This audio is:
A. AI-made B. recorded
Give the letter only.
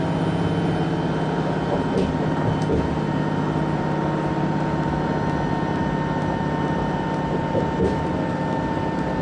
B